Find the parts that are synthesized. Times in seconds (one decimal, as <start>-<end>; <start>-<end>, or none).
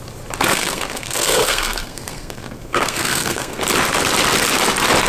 0.5-3.6